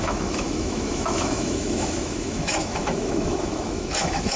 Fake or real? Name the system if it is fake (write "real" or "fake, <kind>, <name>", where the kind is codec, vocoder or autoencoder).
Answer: fake, autoencoder, DAC-VAE